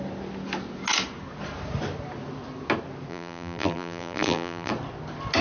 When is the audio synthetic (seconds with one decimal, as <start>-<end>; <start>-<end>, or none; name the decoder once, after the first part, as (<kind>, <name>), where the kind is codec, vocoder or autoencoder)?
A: 3.1-4.7 (vocoder, BigVGAN v2)